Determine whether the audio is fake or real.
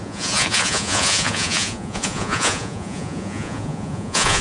fake